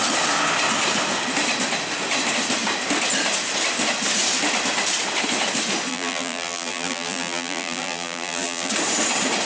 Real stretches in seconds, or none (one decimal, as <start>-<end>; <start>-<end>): 0.0-5.9; 8.7-9.4